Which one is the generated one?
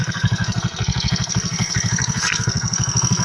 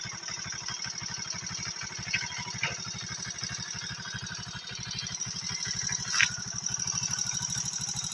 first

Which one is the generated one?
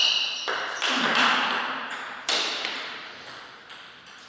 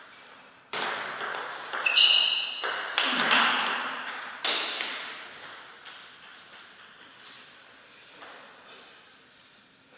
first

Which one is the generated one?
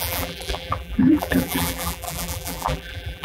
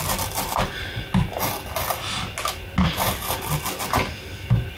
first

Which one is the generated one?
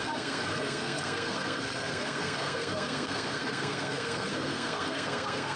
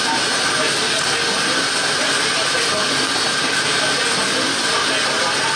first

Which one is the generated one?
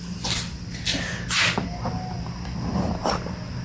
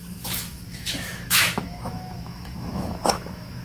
second